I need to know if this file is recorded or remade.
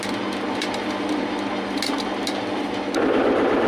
recorded